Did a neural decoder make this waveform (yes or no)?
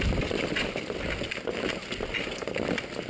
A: no